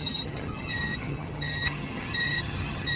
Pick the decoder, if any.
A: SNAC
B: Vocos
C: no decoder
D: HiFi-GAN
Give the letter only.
D